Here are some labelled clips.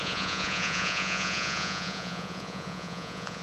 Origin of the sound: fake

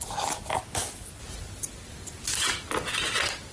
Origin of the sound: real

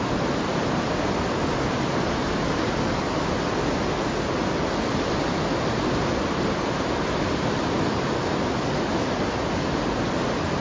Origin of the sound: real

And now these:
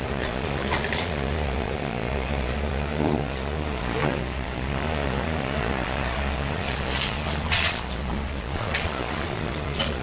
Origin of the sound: fake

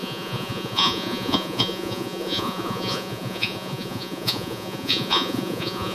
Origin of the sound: fake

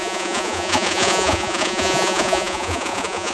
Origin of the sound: fake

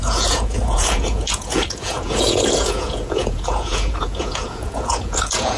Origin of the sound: fake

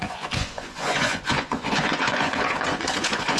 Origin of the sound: fake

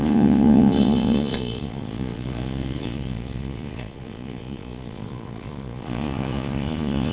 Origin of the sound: fake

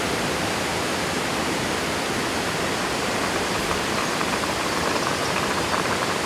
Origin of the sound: real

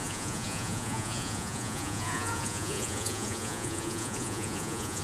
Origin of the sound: fake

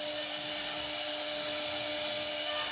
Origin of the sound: real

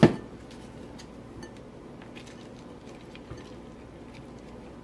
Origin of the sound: real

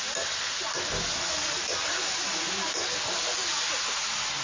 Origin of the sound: real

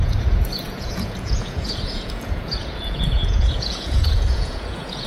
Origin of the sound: fake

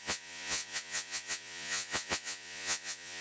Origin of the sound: fake